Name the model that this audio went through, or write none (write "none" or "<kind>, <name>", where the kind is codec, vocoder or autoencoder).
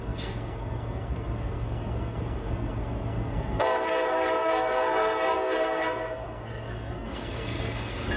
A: codec, SNAC